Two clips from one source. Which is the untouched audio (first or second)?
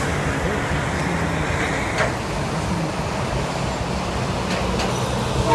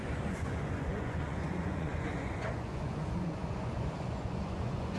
first